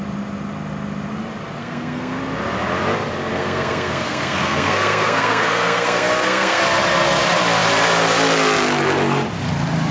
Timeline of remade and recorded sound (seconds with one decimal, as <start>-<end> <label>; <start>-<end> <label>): 0.0-1.6 recorded; 1.6-2.2 remade; 2.2-3.3 recorded; 3.3-6.6 remade; 6.6-9.9 recorded